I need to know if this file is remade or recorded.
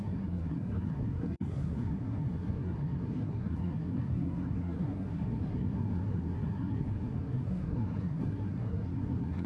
remade